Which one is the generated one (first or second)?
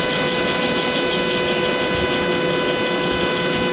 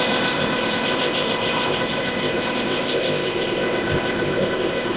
second